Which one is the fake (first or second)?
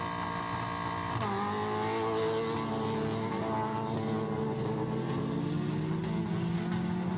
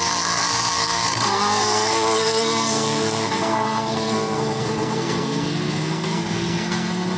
second